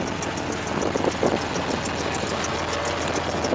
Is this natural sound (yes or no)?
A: yes